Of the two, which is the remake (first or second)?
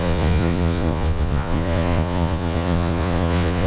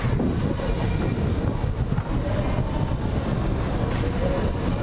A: first